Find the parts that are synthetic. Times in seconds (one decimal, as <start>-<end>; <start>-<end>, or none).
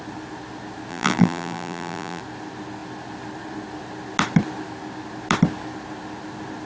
0.9-2.2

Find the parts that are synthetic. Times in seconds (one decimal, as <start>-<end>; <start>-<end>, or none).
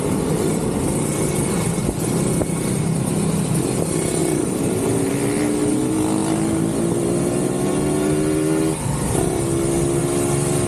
4.2-5.1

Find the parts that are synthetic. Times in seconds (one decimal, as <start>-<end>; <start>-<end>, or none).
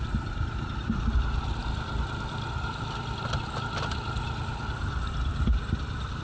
0.0-6.2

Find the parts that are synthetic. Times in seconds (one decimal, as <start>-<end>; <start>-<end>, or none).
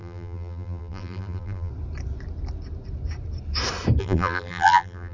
0.0-1.7; 4.0-5.1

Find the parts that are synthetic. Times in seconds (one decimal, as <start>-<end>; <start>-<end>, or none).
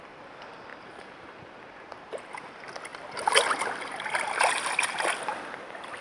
0.7-2.1